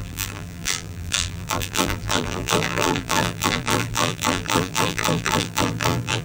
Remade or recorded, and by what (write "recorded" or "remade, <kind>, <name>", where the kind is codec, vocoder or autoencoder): remade, vocoder, BigVGAN v2